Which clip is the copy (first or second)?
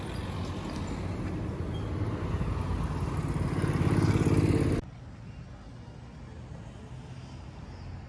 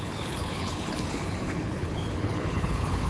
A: second